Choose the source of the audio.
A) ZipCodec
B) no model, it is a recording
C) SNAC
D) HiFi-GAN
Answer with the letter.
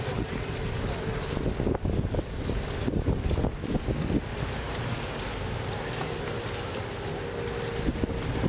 B